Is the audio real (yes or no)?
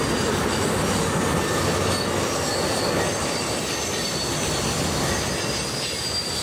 yes